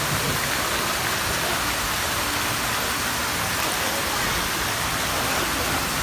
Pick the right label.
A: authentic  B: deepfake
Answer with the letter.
A